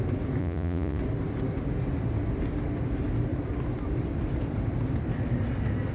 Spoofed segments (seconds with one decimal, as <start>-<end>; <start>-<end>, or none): 0.4-1.0